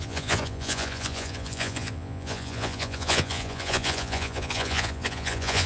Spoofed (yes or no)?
yes